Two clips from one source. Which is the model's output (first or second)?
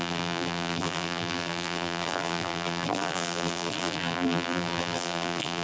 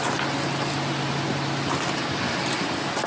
first